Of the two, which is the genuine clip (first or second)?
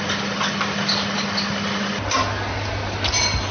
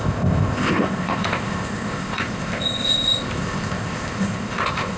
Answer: first